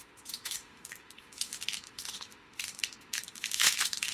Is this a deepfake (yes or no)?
yes